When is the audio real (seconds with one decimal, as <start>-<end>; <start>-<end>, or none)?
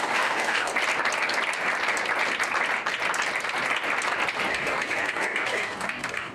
0.7-4.5